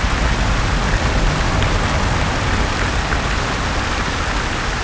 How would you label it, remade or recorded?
recorded